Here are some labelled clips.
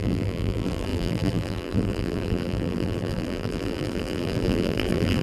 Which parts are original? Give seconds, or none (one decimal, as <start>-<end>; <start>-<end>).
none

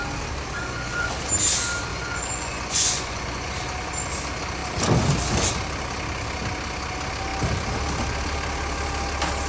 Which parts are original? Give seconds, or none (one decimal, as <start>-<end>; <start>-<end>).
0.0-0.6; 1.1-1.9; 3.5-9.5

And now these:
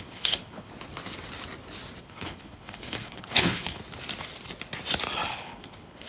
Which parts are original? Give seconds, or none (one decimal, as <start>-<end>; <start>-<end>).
0.7-2.0; 3.8-5.3